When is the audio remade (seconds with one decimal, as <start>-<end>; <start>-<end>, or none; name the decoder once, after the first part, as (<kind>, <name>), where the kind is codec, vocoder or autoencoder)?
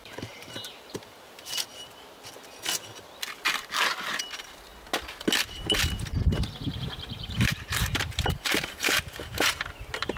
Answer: 0.0-1.7 (vocoder, BigVGAN v2); 4.2-4.7; 5.5-10.2